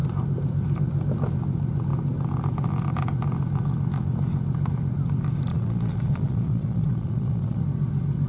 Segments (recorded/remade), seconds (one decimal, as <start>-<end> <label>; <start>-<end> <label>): 0.0-5.5 recorded; 5.5-7.6 remade; 7.6-8.3 recorded